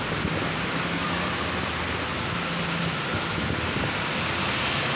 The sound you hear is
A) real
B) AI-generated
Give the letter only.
A